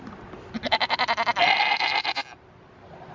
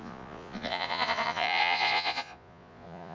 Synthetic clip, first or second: second